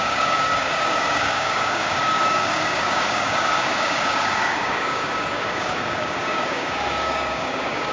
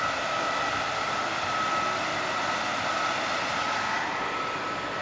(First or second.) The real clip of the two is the second